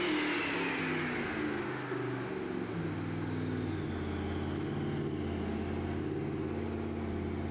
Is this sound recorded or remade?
recorded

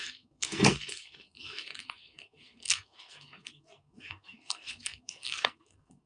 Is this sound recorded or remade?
remade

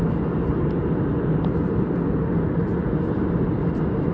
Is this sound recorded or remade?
recorded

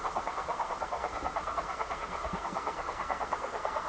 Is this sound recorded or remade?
remade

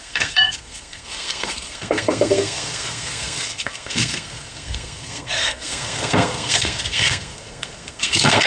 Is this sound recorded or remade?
remade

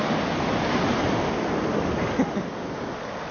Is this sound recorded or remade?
recorded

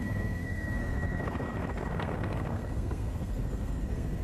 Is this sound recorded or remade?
remade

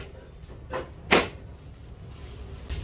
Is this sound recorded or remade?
recorded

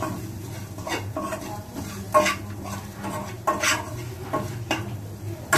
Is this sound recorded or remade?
recorded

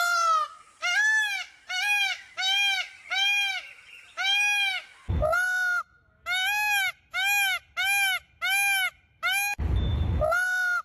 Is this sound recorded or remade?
recorded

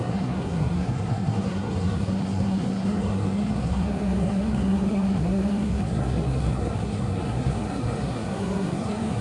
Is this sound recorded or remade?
remade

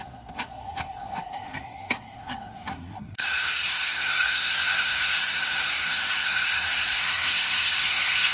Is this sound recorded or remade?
remade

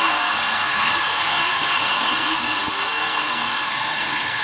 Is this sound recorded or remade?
remade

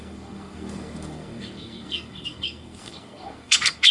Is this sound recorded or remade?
remade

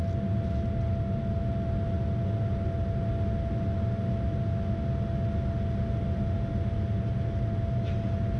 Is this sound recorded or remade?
recorded